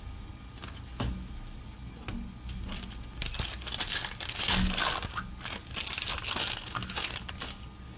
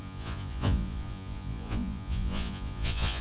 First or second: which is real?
first